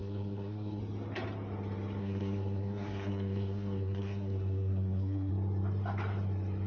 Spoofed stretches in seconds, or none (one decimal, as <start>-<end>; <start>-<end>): 0.0-0.8; 2.0-5.3